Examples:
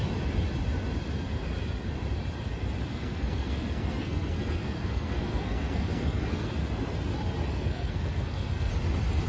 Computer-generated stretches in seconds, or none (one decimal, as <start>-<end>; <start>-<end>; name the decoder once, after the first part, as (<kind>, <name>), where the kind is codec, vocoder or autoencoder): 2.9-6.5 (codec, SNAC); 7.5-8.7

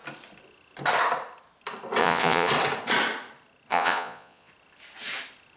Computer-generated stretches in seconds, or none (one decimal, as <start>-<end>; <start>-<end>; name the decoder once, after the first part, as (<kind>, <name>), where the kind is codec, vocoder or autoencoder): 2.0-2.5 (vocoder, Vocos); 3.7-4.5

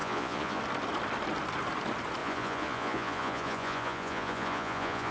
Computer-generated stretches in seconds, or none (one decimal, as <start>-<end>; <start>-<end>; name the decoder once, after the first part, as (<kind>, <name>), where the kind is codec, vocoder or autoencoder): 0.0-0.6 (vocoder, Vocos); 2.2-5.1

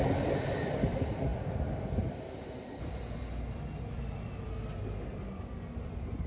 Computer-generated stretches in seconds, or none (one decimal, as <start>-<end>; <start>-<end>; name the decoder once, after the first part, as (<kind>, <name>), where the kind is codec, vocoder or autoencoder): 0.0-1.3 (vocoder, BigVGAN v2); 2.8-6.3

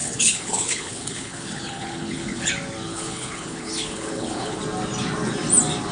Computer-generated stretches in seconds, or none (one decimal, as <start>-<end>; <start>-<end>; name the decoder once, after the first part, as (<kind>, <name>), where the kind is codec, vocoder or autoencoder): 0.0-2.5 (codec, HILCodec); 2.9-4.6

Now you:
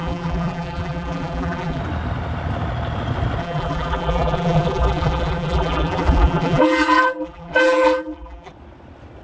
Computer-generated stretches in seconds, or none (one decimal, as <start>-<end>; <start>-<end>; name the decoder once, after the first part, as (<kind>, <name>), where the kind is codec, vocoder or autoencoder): 0.0-1.8 (vocoder, BigVGAN v2); 3.4-8.5

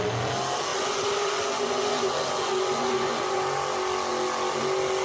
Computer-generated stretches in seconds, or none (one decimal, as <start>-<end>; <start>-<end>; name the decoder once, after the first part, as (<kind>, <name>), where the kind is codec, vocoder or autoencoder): 0.7-3.4 (vocoder, Vocos)

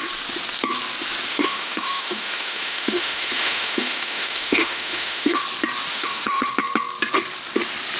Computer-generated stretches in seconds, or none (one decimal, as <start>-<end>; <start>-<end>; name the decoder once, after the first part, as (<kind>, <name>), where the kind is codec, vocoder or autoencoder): 1.3-5.4 (autoencoder, DAC-VAE); 5.9-6.5